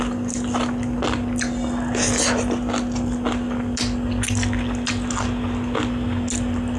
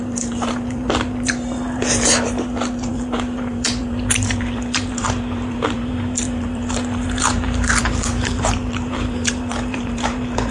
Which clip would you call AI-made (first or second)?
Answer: second